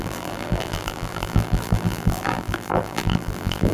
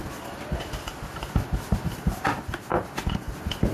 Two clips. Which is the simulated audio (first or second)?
first